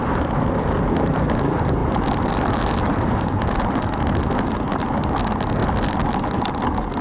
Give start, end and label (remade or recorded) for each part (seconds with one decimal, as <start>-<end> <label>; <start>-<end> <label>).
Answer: 0.0-7.0 recorded